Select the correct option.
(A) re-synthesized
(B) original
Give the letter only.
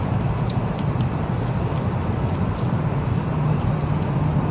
B